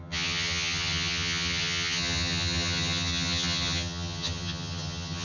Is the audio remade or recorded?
remade